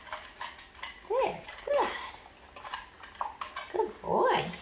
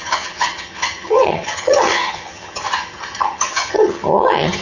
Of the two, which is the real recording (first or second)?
first